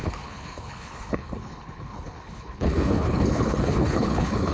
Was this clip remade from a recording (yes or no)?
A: yes